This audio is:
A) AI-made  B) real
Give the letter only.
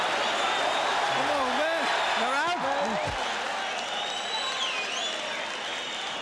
B